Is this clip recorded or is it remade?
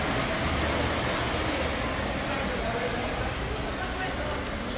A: recorded